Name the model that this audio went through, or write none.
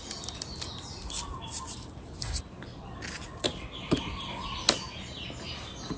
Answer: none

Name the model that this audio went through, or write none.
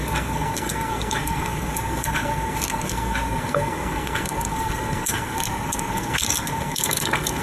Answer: codec, SNAC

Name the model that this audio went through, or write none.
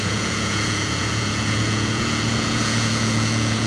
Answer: vocoder, Vocos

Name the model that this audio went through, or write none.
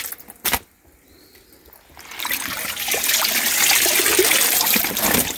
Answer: none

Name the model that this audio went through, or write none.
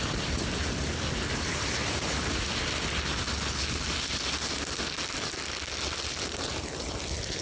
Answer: none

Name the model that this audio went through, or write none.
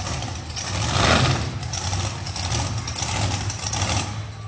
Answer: none